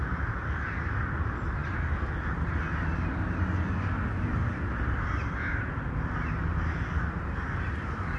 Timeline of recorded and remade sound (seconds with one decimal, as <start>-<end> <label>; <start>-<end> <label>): 0.0-8.2 recorded